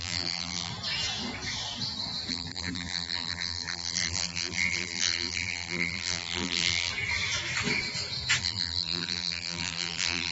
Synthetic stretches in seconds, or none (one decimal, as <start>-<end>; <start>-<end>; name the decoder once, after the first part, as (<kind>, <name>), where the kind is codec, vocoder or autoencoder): 0.0-0.7 (vocoder, BigVGAN v2); 2.3-6.9; 8.4-10.3